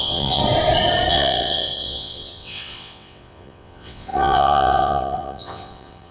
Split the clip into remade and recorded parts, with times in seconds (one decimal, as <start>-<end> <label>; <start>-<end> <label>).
0.0-0.4 remade; 0.4-1.1 recorded; 1.1-6.1 remade